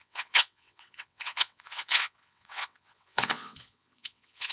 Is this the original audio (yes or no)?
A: no